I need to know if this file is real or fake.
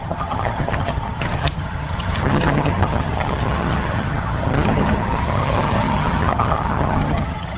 fake